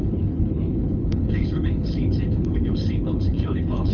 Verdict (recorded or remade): remade